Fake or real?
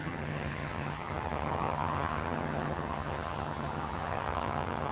fake